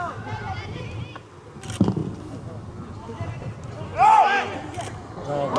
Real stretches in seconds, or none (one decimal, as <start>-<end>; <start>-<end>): 0.0-5.6